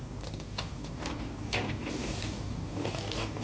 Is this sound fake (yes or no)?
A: yes